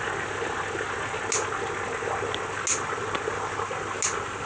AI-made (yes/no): no